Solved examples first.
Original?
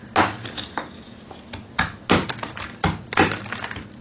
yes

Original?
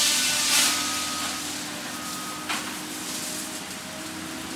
yes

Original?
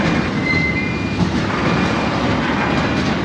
yes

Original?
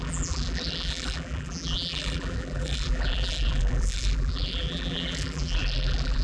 no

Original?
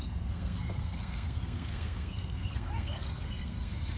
no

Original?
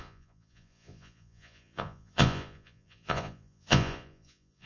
no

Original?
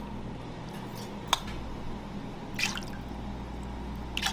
yes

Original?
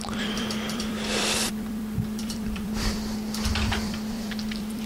no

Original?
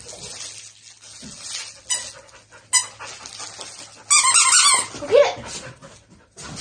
yes